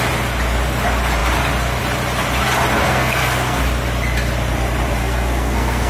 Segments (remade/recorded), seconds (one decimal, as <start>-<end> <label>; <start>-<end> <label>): 0.0-2.8 recorded; 2.8-3.6 remade; 3.6-5.0 recorded; 5.0-5.9 remade